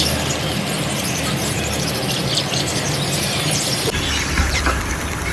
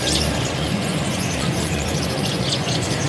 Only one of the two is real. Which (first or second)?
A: first